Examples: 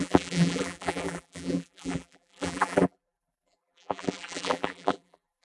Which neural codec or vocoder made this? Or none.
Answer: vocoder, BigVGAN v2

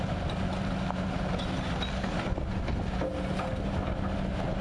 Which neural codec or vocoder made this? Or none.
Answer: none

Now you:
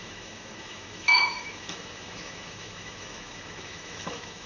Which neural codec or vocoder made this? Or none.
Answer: autoencoder, DAC-VAE